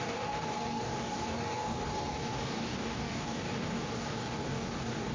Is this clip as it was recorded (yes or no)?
no